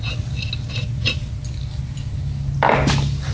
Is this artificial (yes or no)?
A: no